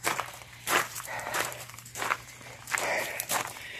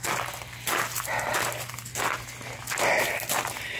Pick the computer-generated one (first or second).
first